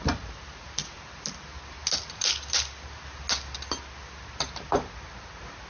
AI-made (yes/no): no